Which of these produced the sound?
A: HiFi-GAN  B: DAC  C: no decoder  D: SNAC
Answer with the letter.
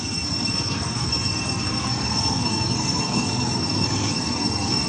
D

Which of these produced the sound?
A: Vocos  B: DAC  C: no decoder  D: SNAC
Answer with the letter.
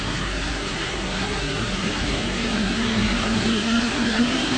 D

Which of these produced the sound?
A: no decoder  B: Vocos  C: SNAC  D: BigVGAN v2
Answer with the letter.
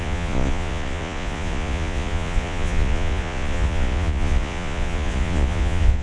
B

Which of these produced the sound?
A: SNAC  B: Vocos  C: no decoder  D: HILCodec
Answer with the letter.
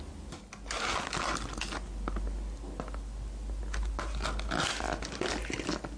C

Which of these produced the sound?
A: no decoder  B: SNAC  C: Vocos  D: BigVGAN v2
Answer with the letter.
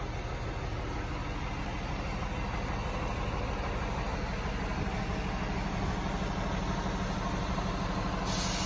A